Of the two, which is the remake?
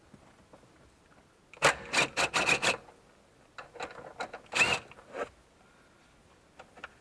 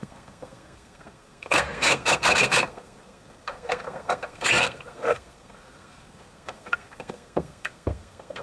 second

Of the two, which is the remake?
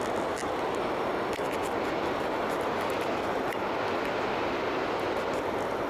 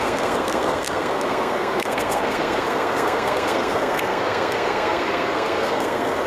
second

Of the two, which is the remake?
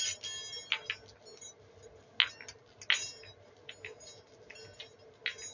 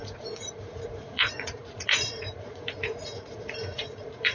second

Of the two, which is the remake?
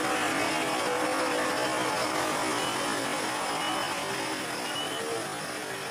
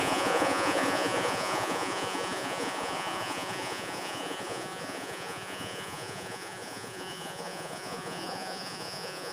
second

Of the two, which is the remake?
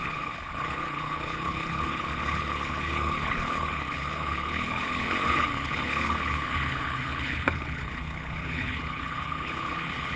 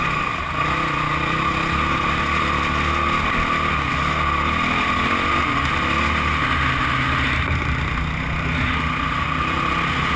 first